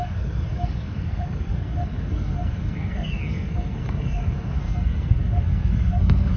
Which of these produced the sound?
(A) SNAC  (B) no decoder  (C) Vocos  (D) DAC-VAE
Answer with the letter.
A